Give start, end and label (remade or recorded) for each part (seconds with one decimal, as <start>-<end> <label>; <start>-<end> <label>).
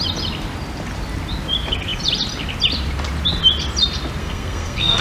0.0-4.2 recorded; 4.2-5.0 remade